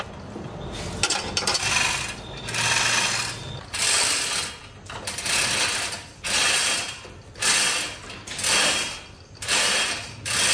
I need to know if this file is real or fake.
real